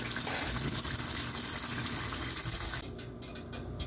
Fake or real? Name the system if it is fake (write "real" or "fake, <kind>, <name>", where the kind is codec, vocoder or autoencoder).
real